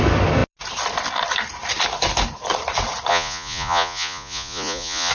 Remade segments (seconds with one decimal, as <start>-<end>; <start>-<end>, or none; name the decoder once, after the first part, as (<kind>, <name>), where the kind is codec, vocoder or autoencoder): 3.1-5.1 (vocoder, Vocos)